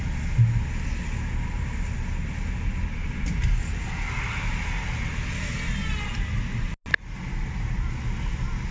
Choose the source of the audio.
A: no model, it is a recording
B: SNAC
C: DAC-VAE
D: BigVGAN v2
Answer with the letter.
A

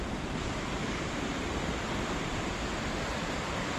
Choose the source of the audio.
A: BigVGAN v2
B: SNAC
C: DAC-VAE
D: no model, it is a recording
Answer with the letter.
D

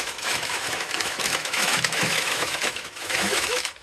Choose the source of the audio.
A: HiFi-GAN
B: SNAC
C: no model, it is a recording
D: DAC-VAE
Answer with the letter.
D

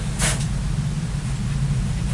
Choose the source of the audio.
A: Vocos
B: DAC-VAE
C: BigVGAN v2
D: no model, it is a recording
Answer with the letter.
D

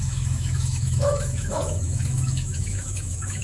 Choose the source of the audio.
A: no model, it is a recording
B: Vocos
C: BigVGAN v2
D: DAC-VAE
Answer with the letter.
D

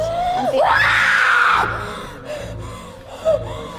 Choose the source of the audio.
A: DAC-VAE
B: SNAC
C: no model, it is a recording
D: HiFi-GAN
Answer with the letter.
C